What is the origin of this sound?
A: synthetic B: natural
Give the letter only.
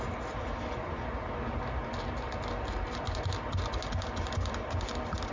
B